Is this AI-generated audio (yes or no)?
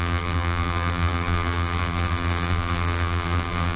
yes